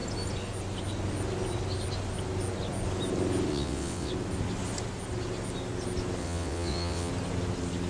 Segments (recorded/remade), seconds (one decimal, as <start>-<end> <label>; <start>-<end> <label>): 0.0-3.5 recorded; 3.5-4.1 remade; 4.1-6.2 recorded; 6.2-7.1 remade; 7.1-7.9 recorded